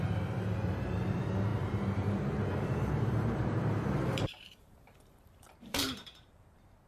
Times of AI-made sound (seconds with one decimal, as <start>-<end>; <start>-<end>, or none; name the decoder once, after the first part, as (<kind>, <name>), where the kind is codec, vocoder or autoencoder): 0.0-6.9 (vocoder, BigVGAN v2)